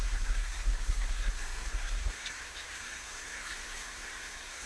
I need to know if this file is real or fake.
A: fake